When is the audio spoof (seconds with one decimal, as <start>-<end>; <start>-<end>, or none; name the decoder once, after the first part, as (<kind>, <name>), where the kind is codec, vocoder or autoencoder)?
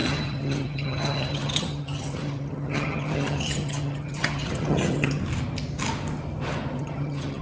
0.0-5.2 (vocoder, HiFi-GAN); 6.8-7.4